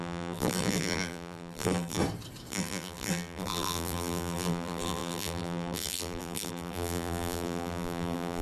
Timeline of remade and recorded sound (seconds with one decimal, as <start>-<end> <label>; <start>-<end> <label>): 0.0-2.0 remade; 2.0-2.5 recorded; 2.5-8.4 remade